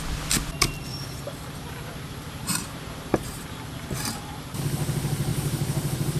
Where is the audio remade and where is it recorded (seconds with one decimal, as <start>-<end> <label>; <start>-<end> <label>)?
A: 0.0-0.9 recorded; 0.9-4.6 remade; 4.6-5.3 recorded; 5.3-6.2 remade